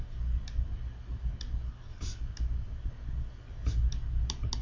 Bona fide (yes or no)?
yes